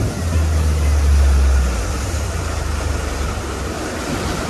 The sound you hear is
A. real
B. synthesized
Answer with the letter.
A